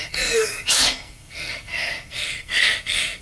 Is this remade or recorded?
remade